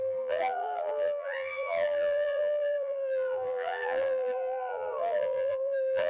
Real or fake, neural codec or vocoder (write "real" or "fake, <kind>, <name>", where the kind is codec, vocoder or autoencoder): fake, vocoder, BigVGAN v2